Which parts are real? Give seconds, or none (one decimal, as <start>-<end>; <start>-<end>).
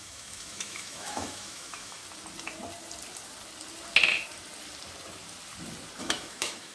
2.0-6.0